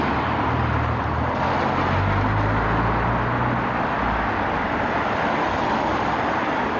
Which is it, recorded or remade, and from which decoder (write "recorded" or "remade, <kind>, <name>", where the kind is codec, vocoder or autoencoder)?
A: recorded